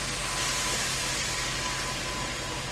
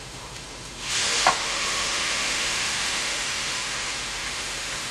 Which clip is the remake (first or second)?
second